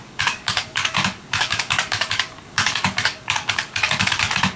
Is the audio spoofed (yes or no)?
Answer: yes